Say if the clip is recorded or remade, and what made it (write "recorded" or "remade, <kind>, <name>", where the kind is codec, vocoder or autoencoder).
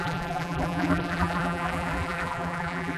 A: remade, vocoder, BigVGAN v2